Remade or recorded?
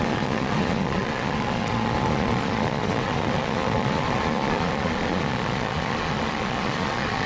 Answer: remade